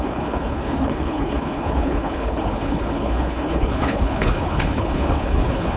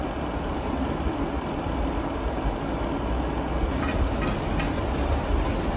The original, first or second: second